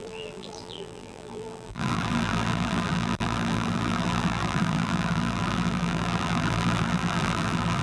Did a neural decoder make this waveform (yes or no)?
yes